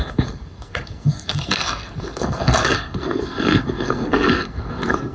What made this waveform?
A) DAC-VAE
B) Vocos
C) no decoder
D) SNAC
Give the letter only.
D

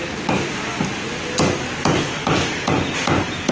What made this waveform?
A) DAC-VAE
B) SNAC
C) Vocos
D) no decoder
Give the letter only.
D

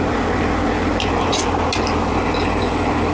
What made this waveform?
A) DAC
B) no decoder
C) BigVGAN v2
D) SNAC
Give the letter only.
B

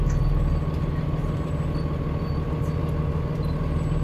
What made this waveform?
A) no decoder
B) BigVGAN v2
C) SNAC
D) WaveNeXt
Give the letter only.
A